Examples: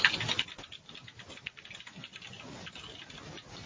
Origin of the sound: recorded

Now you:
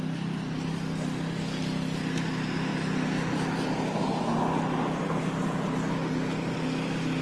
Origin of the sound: recorded